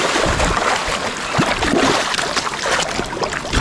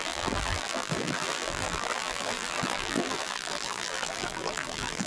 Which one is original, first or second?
first